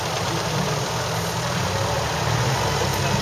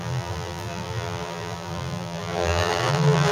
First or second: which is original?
first